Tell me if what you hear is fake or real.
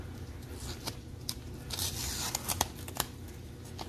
real